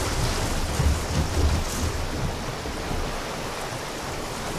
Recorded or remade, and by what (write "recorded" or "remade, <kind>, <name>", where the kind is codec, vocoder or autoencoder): recorded